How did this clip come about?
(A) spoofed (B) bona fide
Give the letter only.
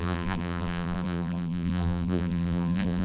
A